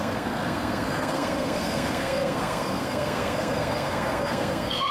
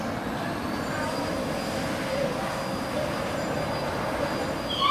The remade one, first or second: first